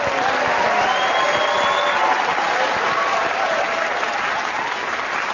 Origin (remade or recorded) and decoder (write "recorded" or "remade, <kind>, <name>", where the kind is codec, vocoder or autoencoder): recorded